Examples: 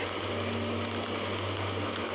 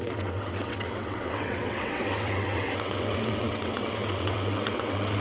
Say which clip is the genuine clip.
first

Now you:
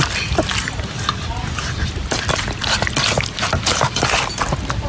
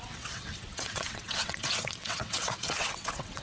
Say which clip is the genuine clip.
first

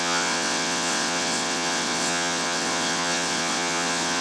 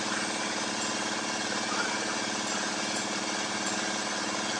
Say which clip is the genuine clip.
second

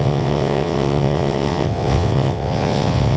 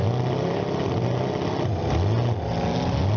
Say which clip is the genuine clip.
second